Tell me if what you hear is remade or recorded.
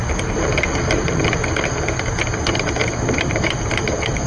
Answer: remade